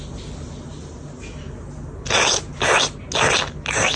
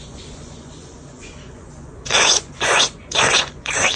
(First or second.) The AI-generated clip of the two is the second